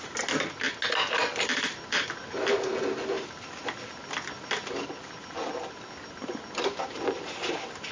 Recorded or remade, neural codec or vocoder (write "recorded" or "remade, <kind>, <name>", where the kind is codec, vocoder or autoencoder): recorded